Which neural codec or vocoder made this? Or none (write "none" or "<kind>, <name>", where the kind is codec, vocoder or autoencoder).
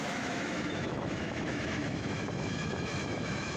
autoencoder, DAC-VAE